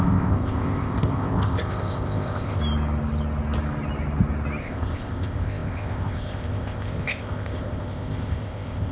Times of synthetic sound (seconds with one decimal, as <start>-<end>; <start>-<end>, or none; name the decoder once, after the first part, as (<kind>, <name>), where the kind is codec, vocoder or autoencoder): 0.0-2.6 (codec, ZipCodec); 4.6-8.9